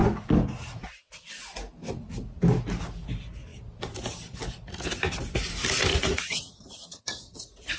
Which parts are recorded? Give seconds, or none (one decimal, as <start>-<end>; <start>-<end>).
0.0-5.9; 7.0-7.8